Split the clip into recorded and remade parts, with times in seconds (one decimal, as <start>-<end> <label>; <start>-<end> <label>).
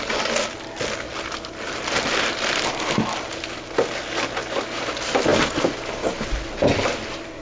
0.0-1.1 recorded; 1.1-3.3 remade; 3.3-7.4 recorded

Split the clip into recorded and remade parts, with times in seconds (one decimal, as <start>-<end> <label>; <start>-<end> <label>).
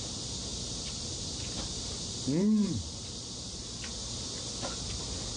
0.0-3.9 remade; 3.9-5.4 recorded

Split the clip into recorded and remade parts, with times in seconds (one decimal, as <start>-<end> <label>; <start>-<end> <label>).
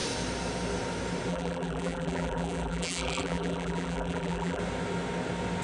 0.0-1.3 recorded; 1.3-4.6 remade; 4.6-5.6 recorded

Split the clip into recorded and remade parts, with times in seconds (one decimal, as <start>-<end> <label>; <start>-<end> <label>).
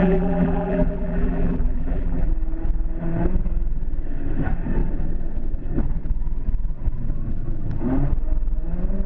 0.0-2.3 remade; 2.3-9.1 recorded